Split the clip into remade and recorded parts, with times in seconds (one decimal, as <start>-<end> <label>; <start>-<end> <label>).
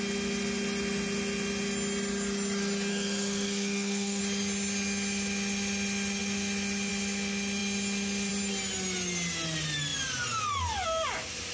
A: 0.0-2.9 recorded; 2.9-4.2 remade; 4.2-11.5 recorded